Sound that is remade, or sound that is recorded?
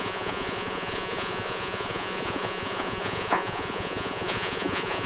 remade